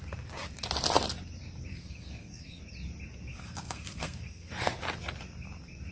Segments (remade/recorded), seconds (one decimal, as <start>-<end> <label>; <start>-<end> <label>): 0.0-1.7 recorded; 1.7-2.6 remade; 2.6-3.3 recorded; 3.3-4.7 remade; 4.7-5.9 recorded